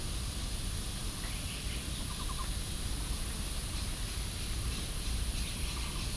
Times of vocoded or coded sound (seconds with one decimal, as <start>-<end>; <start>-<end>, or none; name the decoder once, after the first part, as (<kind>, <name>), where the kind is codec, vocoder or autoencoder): none

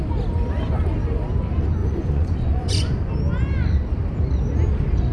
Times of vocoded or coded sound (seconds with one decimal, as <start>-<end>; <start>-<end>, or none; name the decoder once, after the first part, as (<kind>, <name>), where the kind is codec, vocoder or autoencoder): 1.8-3.1 (vocoder, Vocos)